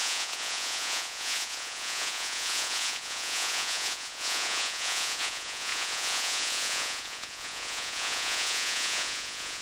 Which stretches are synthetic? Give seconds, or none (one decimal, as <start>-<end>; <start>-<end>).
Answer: 0.0-9.6

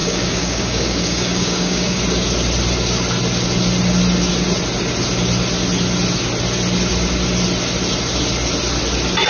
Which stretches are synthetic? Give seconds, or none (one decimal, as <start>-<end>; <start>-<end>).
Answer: 0.0-2.0